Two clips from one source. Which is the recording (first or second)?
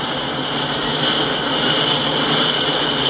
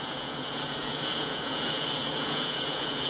first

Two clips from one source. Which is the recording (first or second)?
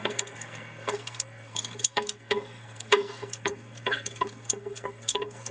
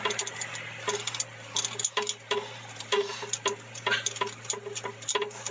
second